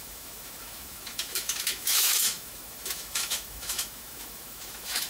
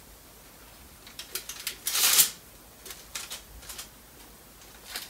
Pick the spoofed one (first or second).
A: first